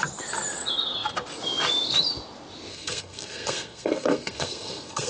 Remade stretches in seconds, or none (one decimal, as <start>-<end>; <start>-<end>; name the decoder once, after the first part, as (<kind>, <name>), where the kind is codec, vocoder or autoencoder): 2.7-5.1 (codec, SNAC)